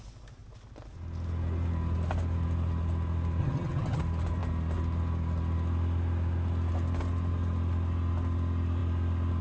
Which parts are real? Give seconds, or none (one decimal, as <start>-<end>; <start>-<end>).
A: 0.0-3.4; 4.0-9.4